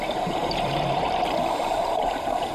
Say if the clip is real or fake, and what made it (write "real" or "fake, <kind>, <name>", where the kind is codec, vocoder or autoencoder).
fake, vocoder, BigVGAN v2